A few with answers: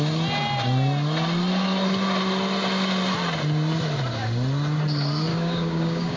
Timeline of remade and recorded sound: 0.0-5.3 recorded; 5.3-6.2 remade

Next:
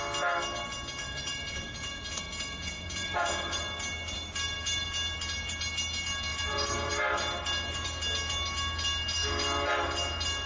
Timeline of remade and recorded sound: 0.0-1.0 recorded; 1.0-3.6 remade; 3.6-6.3 recorded; 6.3-6.9 remade; 6.9-10.5 recorded